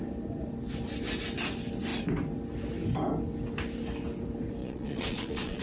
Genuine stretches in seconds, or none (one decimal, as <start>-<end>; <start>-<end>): 0.0-4.6